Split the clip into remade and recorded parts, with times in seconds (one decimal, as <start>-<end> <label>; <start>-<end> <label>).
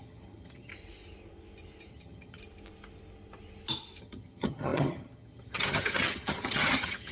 0.0-0.7 remade; 0.7-1.9 recorded; 1.9-2.4 remade; 2.4-4.0 recorded; 4.0-7.1 remade